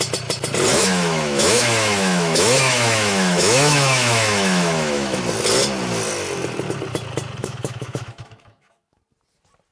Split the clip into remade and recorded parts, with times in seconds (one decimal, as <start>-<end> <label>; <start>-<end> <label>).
0.0-0.7 recorded; 0.7-5.2 remade; 5.2-7.4 recorded; 7.4-9.0 remade; 9.0-9.7 recorded